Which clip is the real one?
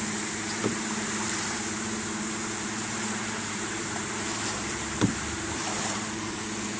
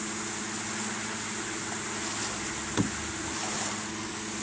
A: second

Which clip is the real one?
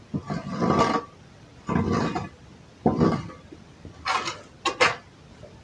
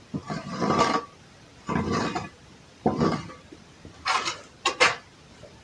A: first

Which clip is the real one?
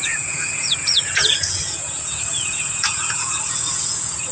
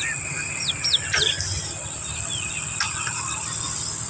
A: second